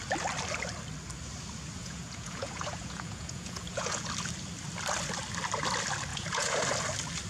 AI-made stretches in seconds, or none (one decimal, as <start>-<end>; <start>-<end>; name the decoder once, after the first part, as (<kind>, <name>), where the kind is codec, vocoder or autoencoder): 1.8-4.1 (vocoder, Vocos); 6.1-6.6